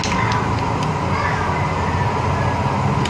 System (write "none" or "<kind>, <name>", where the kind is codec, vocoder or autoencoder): none